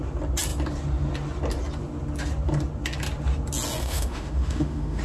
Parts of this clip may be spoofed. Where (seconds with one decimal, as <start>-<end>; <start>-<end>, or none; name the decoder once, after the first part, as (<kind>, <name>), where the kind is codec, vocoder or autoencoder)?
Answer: 3.8-5.0 (autoencoder, DAC-VAE)